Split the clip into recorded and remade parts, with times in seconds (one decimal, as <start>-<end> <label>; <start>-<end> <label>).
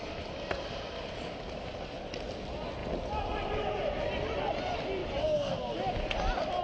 0.0-6.6 recorded